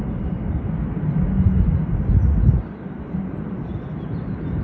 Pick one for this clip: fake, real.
real